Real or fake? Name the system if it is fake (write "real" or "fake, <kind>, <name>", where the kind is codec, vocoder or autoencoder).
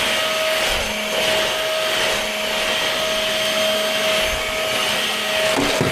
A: real